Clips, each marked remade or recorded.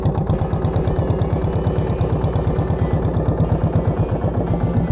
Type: recorded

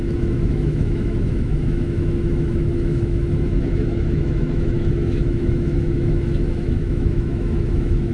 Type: remade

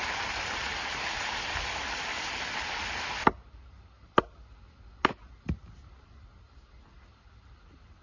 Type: recorded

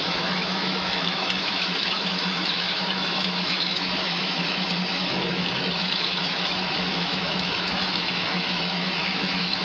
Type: remade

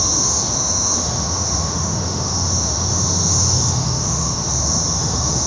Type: remade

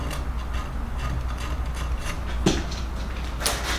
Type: recorded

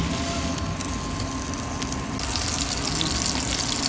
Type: recorded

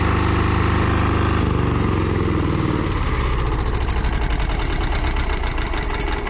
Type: recorded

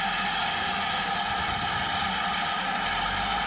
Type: recorded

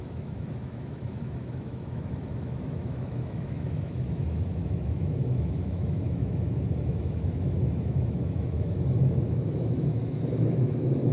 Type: remade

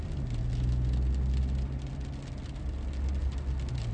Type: recorded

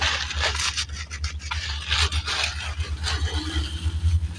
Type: recorded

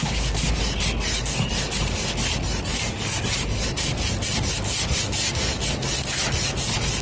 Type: recorded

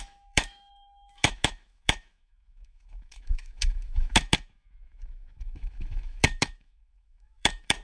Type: remade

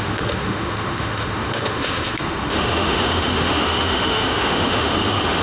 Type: remade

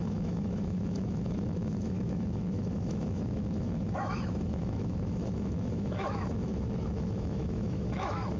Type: remade